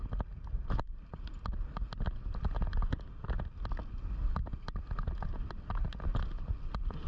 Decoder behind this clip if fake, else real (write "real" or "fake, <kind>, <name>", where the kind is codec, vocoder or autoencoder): real